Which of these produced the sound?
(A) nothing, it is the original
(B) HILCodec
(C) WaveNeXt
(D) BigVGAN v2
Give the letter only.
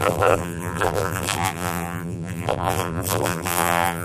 D